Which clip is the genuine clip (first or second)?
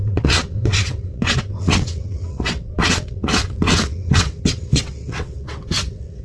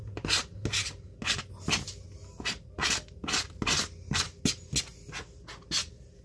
second